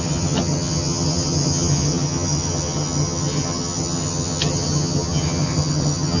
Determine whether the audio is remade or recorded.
remade